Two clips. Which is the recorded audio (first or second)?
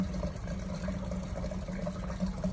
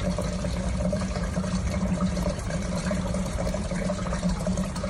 first